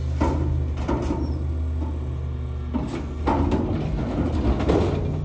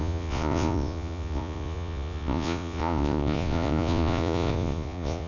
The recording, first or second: first